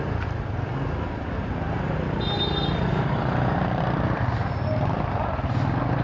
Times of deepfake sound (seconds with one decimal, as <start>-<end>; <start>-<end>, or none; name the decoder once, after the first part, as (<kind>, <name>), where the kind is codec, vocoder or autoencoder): 2.9-3.8 (vocoder, BigVGAN v2)